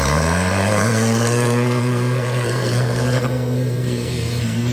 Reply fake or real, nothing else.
fake